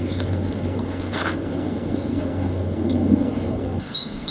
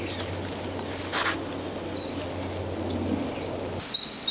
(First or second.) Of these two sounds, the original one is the second